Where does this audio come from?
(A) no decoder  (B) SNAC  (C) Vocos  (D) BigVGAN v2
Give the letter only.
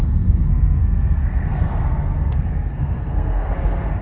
B